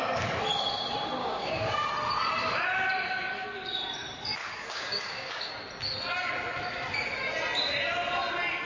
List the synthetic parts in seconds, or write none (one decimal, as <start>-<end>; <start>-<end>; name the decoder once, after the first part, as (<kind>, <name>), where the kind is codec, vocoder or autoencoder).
1.2-1.9 (codec, DAC); 4.4-5.5